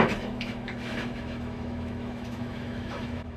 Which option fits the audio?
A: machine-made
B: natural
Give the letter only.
A